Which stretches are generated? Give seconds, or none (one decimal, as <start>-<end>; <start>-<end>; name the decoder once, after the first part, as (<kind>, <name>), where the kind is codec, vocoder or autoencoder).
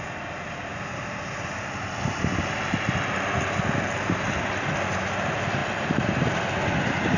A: none